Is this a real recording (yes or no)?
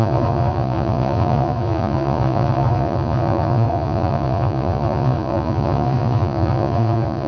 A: no